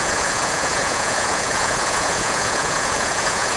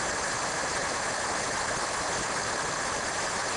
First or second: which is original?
second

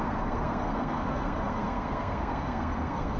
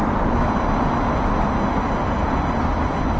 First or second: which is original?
second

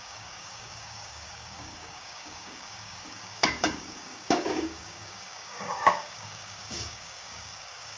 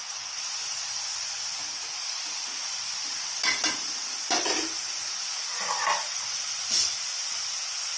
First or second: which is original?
second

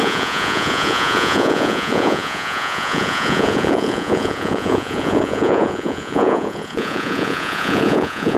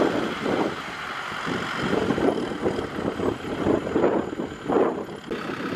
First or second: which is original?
second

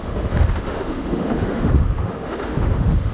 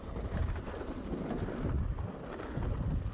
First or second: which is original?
second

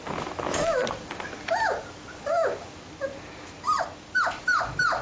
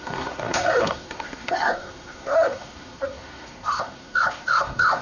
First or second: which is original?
first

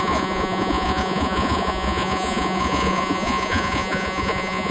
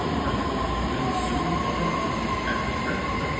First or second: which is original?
second